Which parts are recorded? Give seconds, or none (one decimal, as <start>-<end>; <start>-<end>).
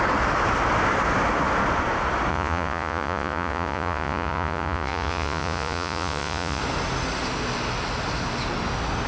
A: 0.0-2.3; 6.6-9.1